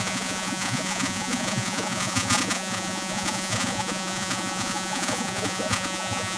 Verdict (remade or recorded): remade